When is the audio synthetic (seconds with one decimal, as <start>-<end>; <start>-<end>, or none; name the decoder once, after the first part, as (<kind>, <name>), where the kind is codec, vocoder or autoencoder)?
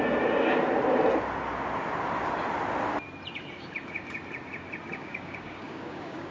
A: 5.0-6.3 (codec, DAC)